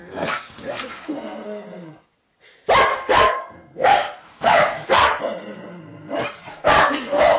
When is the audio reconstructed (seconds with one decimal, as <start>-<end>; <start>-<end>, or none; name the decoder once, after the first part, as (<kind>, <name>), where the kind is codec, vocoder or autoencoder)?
0.0-1.9 (codec, SNAC); 2.9-5.2; 6.5-7.4